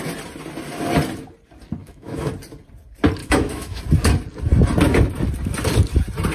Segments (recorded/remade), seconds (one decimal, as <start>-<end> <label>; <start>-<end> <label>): 0.0-1.8 recorded; 1.8-2.3 remade; 2.3-3.2 recorded; 3.2-3.8 remade; 3.8-6.3 recorded